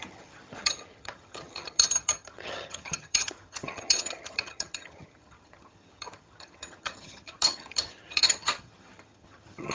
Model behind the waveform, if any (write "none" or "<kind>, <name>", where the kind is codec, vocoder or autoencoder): vocoder, HiFi-GAN